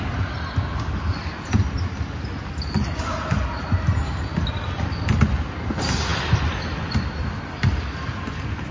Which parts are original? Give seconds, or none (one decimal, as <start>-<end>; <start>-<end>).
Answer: 0.0-8.7